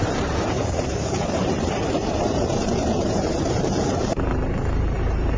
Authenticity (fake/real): fake